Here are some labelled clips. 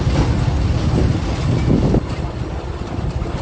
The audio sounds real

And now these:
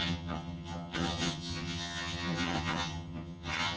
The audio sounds fake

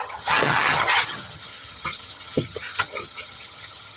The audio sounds fake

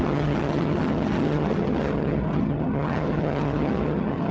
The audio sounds fake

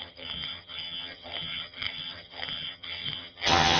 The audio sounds fake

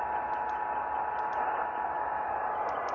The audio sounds real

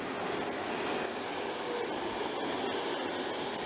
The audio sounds real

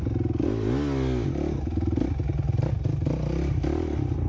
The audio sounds real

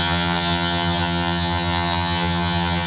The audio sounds fake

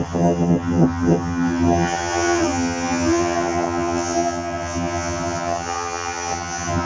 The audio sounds fake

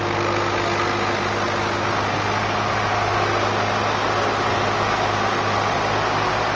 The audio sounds real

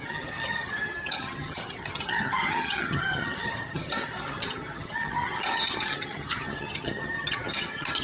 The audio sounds fake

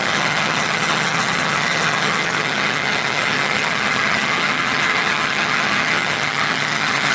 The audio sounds fake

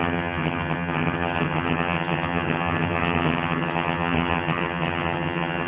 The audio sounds fake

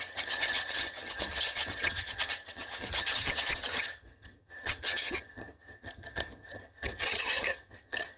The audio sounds fake